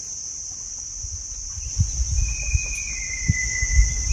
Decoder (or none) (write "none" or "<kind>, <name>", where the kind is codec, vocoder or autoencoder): none